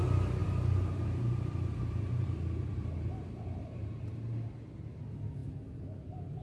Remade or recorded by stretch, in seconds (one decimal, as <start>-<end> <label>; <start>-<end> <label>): 0.0-0.4 recorded; 0.4-4.1 remade; 4.1-6.4 recorded